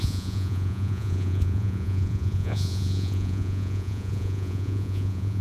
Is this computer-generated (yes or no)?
yes